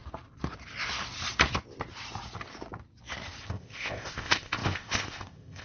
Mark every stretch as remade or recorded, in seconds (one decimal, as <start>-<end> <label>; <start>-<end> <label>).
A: 0.0-3.4 recorded; 3.4-5.6 remade